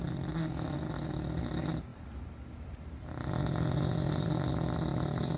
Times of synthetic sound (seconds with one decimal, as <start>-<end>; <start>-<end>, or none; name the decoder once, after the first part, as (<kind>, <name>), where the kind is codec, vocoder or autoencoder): none